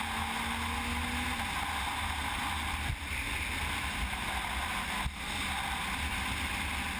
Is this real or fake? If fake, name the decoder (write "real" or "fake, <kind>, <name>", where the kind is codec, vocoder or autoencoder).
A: real